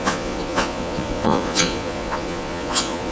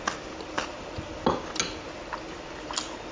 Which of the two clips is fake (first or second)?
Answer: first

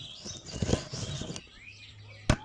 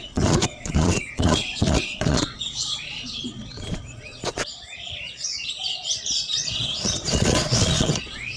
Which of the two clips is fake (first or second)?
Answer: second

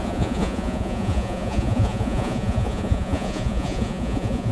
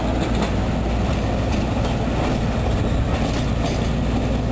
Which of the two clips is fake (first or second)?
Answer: first